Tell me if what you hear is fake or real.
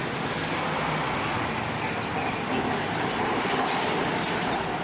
real